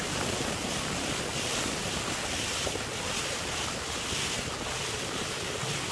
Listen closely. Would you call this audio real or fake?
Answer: real